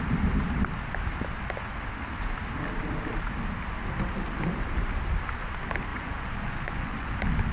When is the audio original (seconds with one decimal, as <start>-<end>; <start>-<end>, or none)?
0.0-5.9; 7.1-7.5